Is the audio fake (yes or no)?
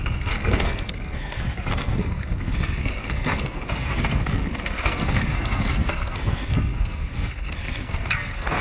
yes